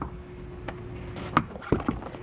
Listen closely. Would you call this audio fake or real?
real